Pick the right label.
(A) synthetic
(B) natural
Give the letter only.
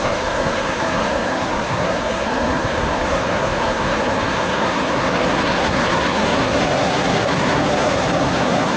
A